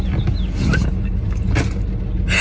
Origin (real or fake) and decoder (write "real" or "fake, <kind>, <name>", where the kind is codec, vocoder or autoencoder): real